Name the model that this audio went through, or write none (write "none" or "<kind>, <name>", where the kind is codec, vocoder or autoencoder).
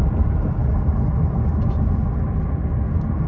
none